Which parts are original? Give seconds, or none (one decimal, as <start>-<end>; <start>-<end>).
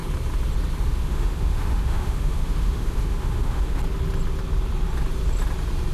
0.0-0.9; 3.8-5.9